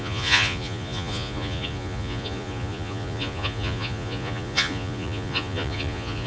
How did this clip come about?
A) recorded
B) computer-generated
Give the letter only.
B